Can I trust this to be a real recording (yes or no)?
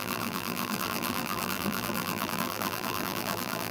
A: no